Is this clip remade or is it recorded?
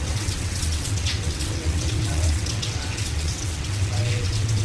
remade